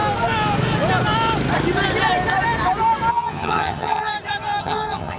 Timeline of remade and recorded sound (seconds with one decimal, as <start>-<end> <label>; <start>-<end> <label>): 0.0-3.1 recorded; 3.1-4.1 remade; 4.1-4.6 recorded; 4.6-5.2 remade